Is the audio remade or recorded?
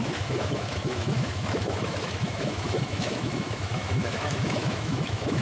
remade